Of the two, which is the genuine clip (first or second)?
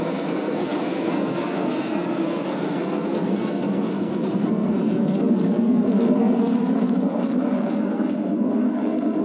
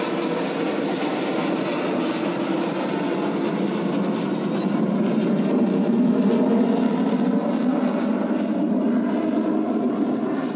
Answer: second